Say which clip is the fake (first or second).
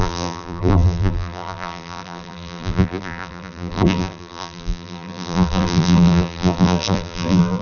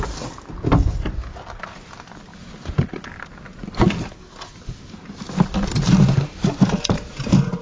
first